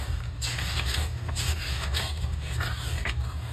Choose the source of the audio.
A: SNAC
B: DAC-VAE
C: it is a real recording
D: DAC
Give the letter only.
D